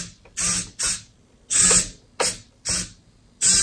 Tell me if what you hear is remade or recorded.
recorded